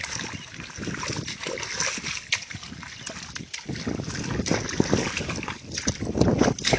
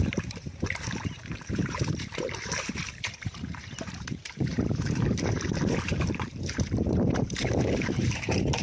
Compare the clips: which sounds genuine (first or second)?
first